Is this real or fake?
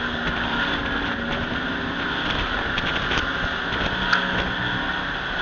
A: real